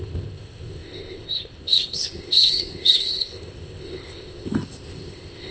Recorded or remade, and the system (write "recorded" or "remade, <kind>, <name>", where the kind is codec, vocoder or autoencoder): remade, codec, ZipCodec